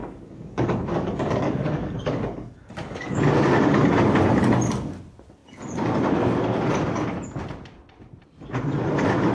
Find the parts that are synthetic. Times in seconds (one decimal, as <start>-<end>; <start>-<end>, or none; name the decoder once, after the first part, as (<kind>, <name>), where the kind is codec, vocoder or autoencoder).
0.0-3.2 (codec, DAC)